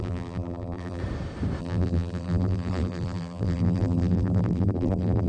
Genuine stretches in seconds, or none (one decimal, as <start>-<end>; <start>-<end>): 1.0-1.6